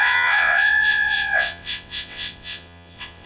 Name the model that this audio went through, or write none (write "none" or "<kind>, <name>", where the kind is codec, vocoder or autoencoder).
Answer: vocoder, WaveNeXt